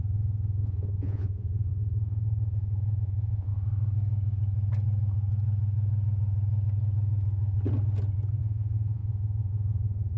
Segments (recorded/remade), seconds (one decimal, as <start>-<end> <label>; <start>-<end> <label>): 0.0-3.5 remade; 3.5-8.4 recorded; 8.4-10.2 remade